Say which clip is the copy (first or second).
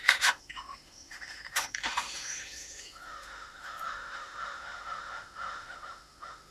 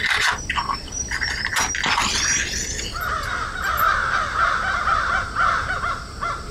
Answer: first